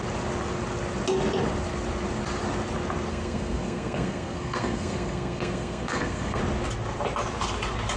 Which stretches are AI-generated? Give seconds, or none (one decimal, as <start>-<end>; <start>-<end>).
3.1-6.4

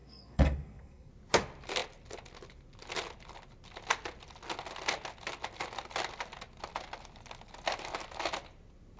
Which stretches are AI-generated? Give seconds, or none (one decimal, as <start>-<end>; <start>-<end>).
0.0-1.1

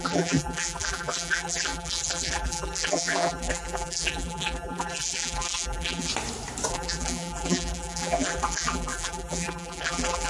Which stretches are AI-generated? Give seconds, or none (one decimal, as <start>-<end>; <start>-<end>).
0.0-6.1; 6.7-10.3

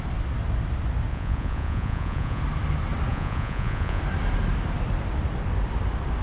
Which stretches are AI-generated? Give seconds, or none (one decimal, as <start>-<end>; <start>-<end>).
1.1-2.4; 3.1-4.0

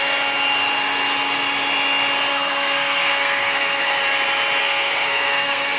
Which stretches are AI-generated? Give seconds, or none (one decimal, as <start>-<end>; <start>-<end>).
2.3-3.8; 4.6-5.8